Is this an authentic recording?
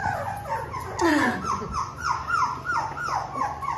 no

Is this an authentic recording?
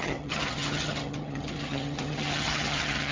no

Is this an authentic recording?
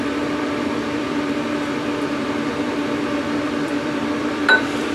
no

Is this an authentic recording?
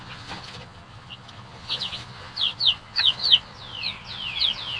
no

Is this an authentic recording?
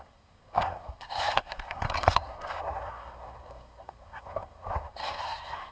no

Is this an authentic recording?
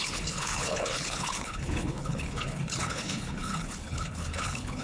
no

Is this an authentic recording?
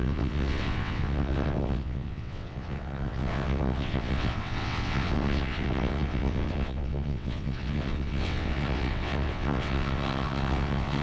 no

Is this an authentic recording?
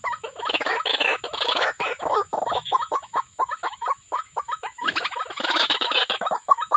no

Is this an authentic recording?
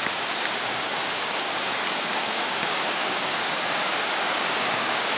no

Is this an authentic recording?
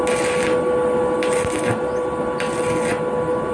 yes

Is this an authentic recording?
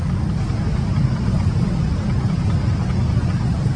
yes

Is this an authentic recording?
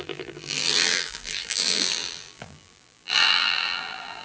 no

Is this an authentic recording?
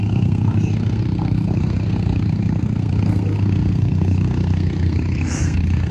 no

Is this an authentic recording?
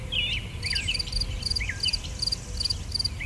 yes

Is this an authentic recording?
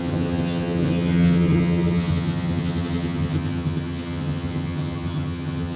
no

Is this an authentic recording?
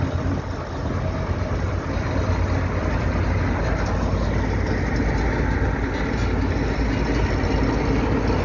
yes